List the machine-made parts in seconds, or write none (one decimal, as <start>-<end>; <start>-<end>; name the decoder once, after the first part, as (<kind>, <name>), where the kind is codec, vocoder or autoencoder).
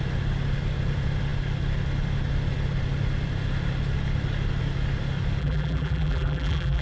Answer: 5.4-6.8 (vocoder, BigVGAN v2)